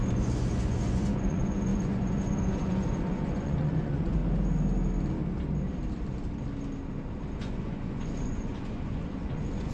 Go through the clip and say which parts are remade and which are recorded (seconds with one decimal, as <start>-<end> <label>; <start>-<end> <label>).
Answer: 0.0-4.2 remade; 4.2-7.4 recorded; 7.4-9.7 remade